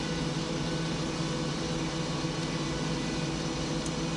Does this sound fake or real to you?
real